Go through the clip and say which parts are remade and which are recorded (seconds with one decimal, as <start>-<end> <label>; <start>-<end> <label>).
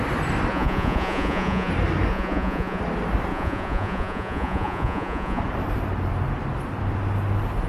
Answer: 0.0-0.5 recorded; 0.5-1.7 remade; 1.7-2.1 recorded; 2.1-2.8 remade; 2.8-3.3 recorded; 3.3-5.4 remade; 5.4-7.7 recorded